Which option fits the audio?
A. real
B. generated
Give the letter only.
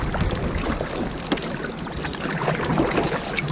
A